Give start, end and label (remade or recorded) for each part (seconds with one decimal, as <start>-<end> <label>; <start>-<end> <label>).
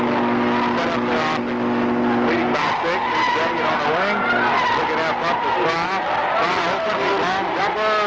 0.0-8.1 recorded